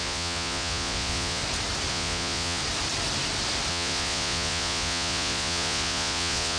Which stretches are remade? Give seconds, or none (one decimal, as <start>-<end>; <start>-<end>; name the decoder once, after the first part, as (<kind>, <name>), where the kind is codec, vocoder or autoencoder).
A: 0.0-1.4 (vocoder, Vocos); 1.9-2.6; 3.7-6.6